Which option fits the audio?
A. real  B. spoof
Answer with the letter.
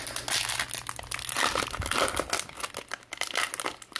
A